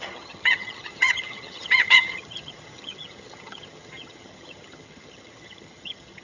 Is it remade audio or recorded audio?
remade